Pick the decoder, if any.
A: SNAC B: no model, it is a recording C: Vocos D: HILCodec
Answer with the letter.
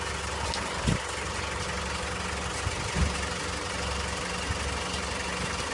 B